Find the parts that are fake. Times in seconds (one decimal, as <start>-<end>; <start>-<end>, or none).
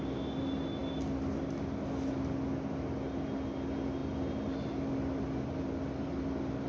none